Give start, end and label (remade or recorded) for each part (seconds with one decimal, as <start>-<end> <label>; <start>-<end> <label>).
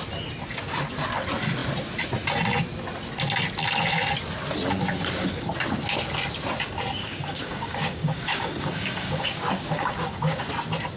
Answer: 0.0-7.0 recorded; 7.0-10.5 remade; 10.5-11.0 recorded